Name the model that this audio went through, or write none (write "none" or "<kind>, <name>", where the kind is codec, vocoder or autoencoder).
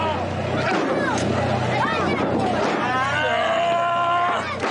none